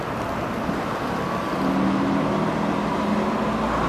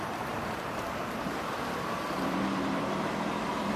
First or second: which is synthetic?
second